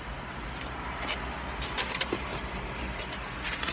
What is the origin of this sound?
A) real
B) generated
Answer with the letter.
A